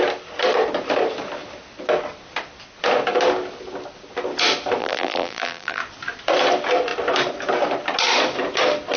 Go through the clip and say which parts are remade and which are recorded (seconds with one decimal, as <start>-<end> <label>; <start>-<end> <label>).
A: 0.0-4.8 recorded; 4.8-5.8 remade; 5.8-9.0 recorded